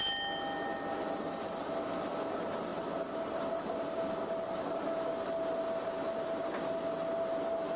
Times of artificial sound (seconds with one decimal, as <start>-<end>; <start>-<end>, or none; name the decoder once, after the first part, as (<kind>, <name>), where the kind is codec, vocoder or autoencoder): none